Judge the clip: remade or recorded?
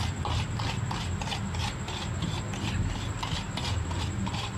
recorded